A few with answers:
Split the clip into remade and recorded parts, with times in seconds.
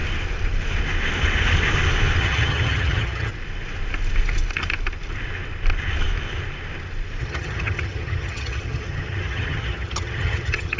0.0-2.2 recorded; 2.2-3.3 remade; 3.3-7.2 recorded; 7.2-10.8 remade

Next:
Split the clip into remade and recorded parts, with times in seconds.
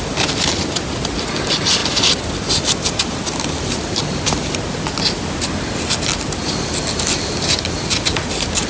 0.0-8.7 recorded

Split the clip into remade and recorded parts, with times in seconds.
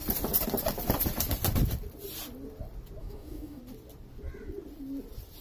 0.0-3.0 recorded; 3.0-3.6 remade; 3.6-5.4 recorded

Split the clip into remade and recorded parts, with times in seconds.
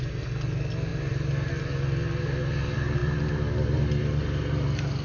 0.0-5.0 recorded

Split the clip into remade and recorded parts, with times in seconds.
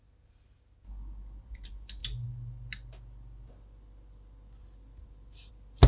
0.0-5.9 recorded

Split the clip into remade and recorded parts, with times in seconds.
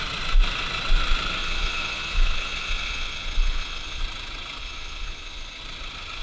0.0-1.4 recorded; 1.4-4.0 remade; 4.0-4.6 recorded; 4.6-5.6 remade; 5.6-6.2 recorded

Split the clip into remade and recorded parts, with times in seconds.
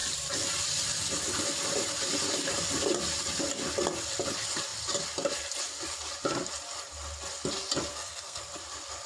0.0-7.9 recorded; 7.9-8.4 remade; 8.4-9.1 recorded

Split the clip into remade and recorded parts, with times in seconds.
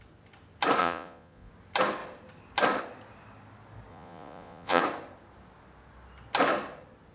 0.0-0.8 recorded; 0.8-1.5 remade; 1.5-3.9 recorded; 3.9-4.8 remade; 4.8-7.1 recorded